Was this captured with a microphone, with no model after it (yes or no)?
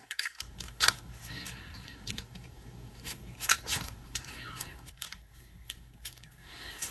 no